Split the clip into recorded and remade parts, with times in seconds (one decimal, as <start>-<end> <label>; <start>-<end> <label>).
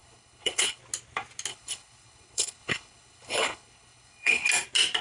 0.0-0.8 remade; 0.8-1.5 recorded; 1.5-4.5 remade; 4.5-5.0 recorded